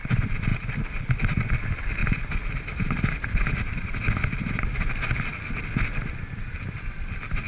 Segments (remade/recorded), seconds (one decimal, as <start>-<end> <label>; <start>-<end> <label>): 0.0-7.5 recorded